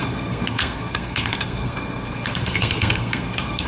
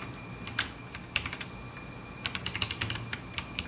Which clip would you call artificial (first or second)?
first